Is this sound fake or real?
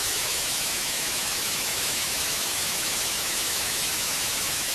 fake